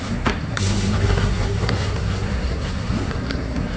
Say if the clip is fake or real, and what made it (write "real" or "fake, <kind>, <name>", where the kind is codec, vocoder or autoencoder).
fake, codec, SNAC